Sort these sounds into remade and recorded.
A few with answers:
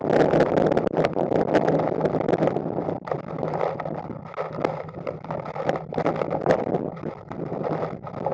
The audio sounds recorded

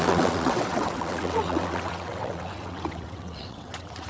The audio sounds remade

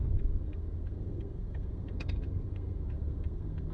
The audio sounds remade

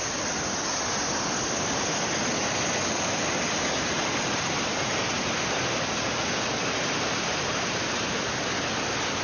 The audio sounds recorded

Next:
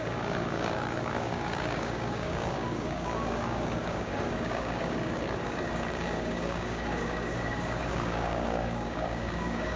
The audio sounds remade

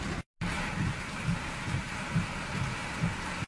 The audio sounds recorded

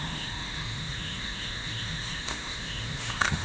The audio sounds remade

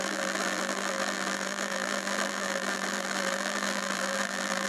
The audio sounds remade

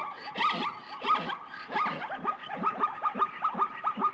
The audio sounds recorded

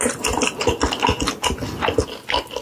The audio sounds recorded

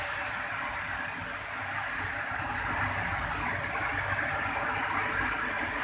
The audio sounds recorded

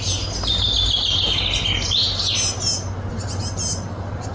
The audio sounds recorded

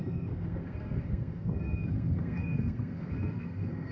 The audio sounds remade